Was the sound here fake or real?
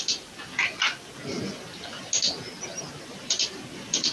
real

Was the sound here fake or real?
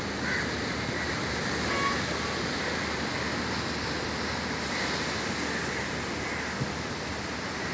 real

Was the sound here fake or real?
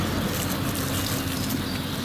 real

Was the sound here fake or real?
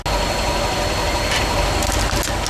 real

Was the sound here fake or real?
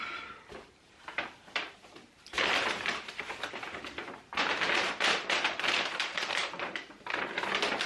fake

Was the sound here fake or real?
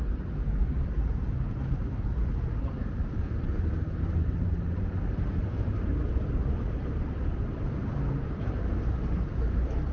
fake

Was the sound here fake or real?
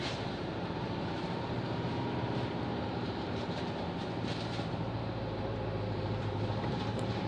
fake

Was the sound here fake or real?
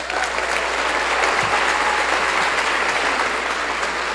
real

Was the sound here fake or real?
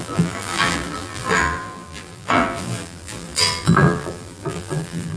fake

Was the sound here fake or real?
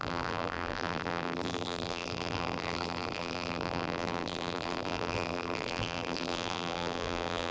fake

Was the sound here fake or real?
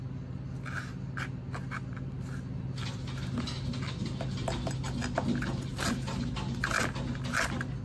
real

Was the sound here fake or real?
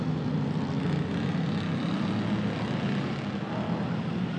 real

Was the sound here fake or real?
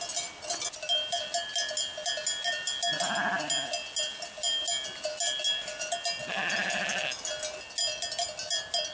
real